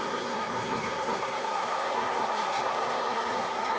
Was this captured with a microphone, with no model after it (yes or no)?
no